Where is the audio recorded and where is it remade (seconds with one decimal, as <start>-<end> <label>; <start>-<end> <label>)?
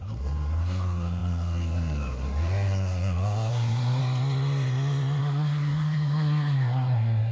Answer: 0.0-4.0 remade; 4.0-5.2 recorded; 5.2-7.3 remade